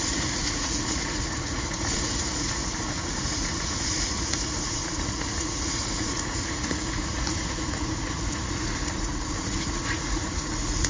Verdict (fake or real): fake